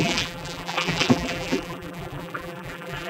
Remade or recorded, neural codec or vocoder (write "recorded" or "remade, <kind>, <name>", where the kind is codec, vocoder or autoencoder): remade, vocoder, BigVGAN v2